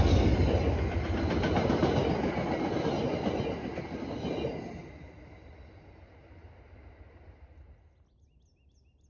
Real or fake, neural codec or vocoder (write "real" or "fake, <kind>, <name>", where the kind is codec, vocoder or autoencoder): real